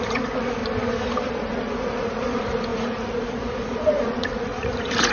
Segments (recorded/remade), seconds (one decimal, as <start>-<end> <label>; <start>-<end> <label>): 0.0-0.6 remade; 0.6-1.3 recorded; 1.3-5.1 remade